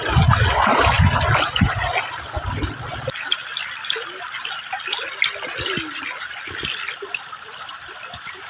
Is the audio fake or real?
real